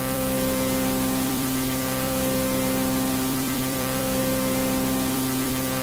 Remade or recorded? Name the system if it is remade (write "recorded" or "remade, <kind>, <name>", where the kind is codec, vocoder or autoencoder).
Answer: remade, vocoder, BigVGAN v2